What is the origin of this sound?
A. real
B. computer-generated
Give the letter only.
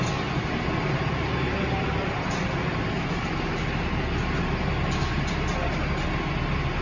A